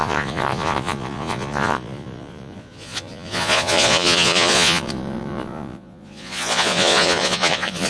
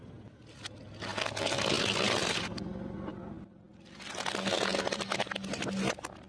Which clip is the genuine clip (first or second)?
second